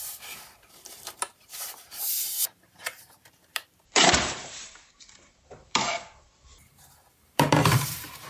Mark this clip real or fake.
fake